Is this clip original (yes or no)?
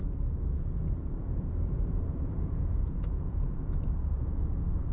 no